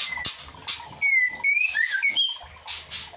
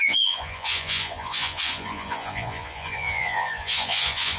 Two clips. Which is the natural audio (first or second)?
first